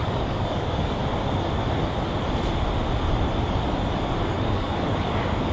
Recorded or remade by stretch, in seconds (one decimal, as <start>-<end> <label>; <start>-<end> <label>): 0.0-1.0 remade; 1.0-4.3 recorded; 4.3-5.5 remade